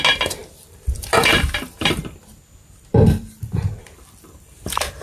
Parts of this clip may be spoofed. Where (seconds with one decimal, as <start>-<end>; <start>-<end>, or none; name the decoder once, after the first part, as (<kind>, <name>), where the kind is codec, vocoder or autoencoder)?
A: 0.4-2.3 (vocoder, BigVGAN v2); 2.9-5.0